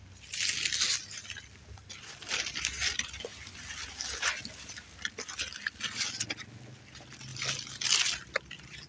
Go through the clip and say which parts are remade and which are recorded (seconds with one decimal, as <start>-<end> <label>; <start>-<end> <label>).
0.0-8.9 recorded